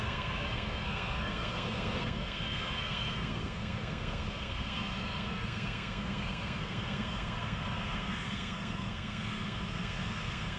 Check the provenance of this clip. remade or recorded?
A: remade